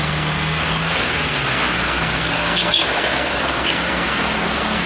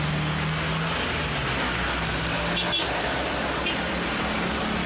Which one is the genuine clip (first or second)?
second